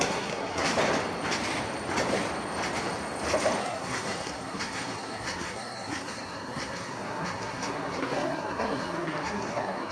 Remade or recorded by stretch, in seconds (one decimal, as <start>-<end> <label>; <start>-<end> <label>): 0.0-0.7 remade; 0.7-3.6 recorded; 3.6-9.9 remade